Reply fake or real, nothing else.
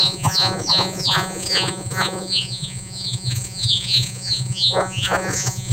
fake